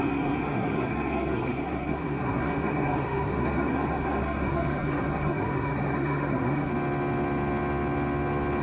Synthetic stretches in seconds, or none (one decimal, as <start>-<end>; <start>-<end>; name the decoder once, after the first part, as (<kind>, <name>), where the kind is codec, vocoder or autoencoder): 0.0-6.7 (codec, SNAC)